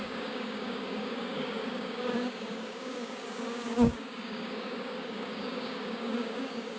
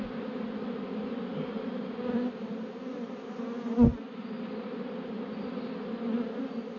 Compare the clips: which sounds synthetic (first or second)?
first